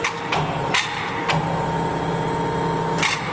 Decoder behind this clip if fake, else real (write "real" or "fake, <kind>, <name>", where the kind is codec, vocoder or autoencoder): real